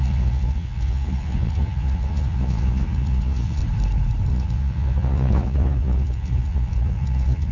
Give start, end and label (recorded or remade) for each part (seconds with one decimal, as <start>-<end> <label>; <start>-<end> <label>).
0.0-3.6 remade; 3.6-4.3 recorded; 4.3-7.5 remade